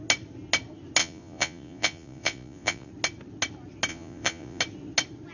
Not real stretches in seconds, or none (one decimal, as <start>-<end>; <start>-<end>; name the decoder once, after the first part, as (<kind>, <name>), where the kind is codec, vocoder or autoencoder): 1.0-2.9 (vocoder, Vocos); 3.9-4.6